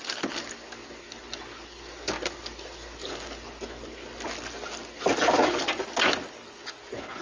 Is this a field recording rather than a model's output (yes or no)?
yes